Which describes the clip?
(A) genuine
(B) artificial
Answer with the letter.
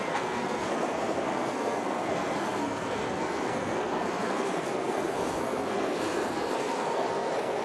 B